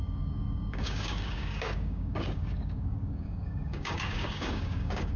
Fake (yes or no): yes